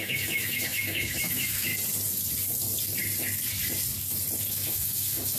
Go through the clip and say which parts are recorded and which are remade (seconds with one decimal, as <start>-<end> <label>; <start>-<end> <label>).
0.0-1.7 remade; 1.7-4.5 recorded; 4.5-5.4 remade